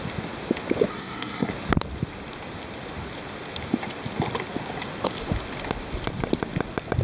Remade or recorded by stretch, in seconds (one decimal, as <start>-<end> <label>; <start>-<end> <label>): 0.0-0.9 recorded; 0.9-1.5 remade; 1.5-7.0 recorded